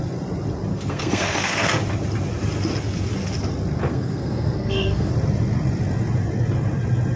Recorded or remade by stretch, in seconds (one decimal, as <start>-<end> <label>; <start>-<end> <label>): 0.0-0.7 recorded; 0.7-1.8 remade; 1.8-3.9 recorded; 3.9-5.1 remade; 5.1-7.2 recorded